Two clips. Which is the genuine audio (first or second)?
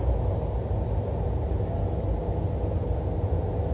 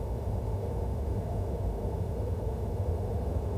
first